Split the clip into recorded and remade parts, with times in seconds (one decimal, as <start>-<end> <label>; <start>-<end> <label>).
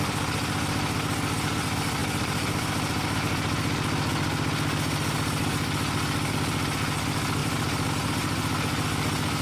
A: 0.0-7.4 recorded; 7.4-7.9 remade; 7.9-9.4 recorded